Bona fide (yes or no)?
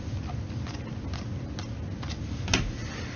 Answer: yes